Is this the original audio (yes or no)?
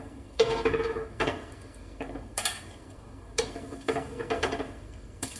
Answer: no